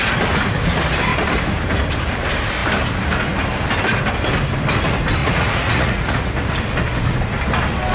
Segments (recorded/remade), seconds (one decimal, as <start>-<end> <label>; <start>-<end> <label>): 0.0-5.2 recorded; 5.2-6.3 remade; 6.3-7.9 recorded